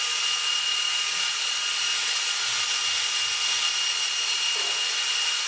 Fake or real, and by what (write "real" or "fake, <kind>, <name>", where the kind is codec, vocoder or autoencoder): real